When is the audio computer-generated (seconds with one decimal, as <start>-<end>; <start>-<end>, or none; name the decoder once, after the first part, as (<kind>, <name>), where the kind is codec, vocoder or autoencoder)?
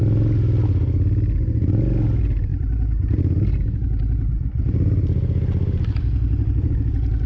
2.5-7.3 (vocoder, BigVGAN v2)